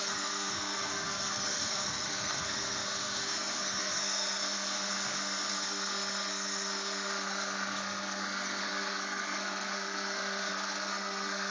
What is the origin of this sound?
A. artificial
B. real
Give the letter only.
A